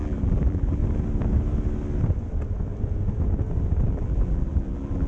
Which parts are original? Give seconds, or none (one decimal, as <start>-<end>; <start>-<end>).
0.8-3.9